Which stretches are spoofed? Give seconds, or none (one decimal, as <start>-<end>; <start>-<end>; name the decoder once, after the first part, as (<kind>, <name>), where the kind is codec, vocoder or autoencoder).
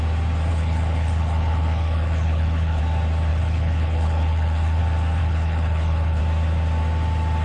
0.5-2.8 (codec, HILCodec); 3.3-4.8; 5.2-6.2